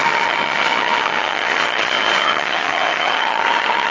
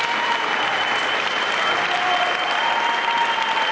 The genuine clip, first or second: second